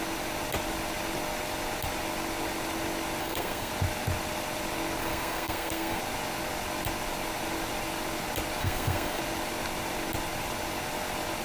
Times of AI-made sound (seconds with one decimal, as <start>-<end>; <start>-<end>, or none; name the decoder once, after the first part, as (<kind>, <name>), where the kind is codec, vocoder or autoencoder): 3.2-3.7 (codec, SNAC); 5.0-6.0; 8.6-9.2